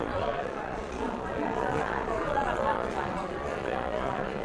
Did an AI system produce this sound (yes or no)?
yes